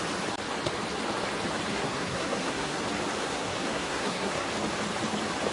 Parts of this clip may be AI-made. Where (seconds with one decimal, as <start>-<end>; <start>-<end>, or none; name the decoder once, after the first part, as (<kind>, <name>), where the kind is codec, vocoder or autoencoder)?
1.7-2.8 (codec, SNAC); 3.2-4.5